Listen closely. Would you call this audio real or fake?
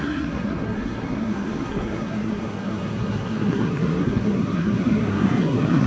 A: fake